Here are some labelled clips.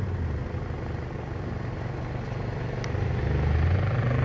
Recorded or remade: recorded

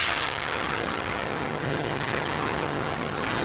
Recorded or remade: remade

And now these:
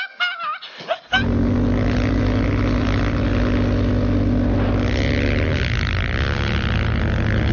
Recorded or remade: recorded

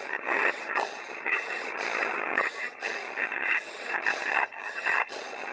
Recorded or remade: remade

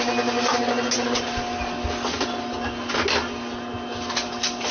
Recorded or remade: recorded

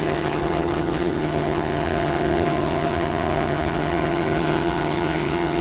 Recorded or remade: remade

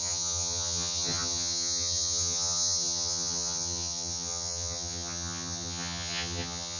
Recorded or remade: remade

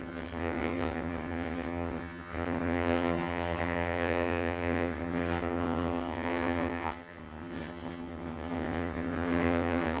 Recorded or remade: remade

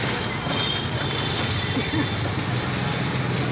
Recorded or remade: recorded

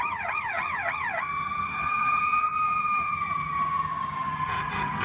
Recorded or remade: remade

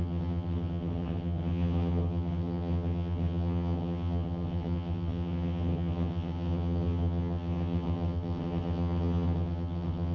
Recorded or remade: remade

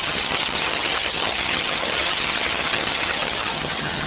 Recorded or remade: remade